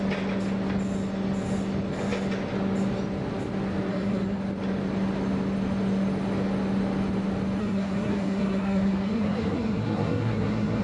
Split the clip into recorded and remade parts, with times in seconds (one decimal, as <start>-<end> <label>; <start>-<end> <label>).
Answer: 0.0-3.9 recorded; 3.9-4.4 remade; 4.4-7.6 recorded; 7.6-10.8 remade